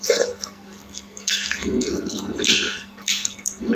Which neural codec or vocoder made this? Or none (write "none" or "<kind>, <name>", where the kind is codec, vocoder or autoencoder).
codec, SNAC